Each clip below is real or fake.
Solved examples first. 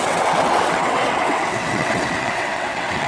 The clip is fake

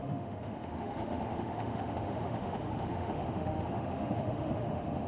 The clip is fake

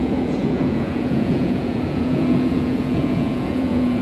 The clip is fake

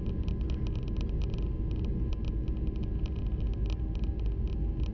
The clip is real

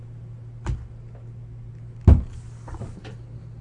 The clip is real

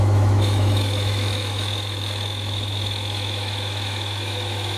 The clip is fake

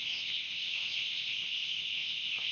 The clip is fake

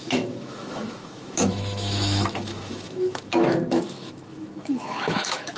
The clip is fake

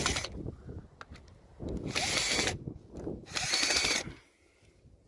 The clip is real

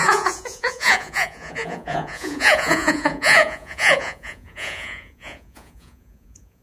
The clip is fake